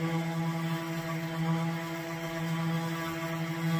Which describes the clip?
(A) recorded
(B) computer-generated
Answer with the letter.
A